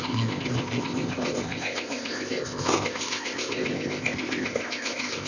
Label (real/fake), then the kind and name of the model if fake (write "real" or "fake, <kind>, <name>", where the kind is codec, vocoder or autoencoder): fake, codec, ZipCodec